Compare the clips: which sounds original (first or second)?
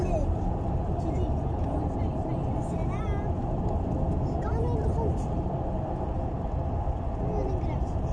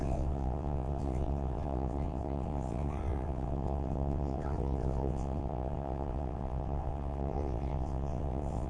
first